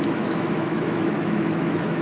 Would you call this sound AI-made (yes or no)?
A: yes